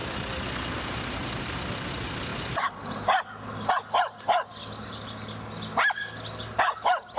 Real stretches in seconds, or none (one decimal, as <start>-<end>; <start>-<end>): 0.0-7.2